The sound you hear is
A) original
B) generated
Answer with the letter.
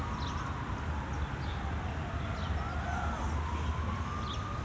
A